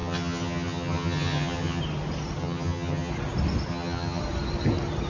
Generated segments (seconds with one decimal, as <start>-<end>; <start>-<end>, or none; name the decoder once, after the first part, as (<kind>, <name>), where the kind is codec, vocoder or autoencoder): 0.0-1.8 (vocoder, HiFi-GAN); 2.4-3.1; 3.7-4.2